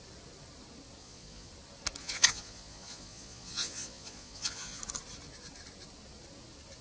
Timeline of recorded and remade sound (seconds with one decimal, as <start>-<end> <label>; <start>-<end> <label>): 0.0-1.0 recorded; 1.0-1.5 remade; 1.5-2.0 recorded; 2.0-4.8 remade; 4.8-6.8 recorded